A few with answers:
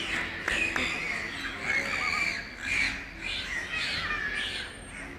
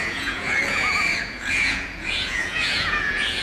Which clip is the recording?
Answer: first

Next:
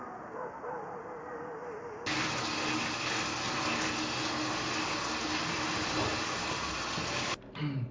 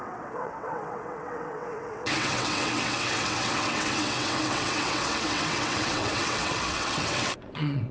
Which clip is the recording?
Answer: first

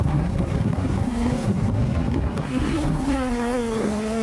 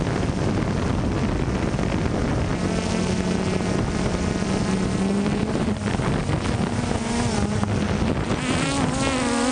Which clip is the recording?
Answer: second